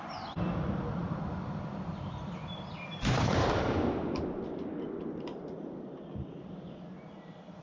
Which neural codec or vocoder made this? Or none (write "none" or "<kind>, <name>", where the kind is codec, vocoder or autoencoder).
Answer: vocoder, BigVGAN v2